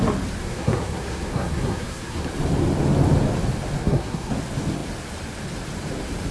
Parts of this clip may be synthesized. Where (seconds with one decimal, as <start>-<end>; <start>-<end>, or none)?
0.4-2.3; 3.8-4.3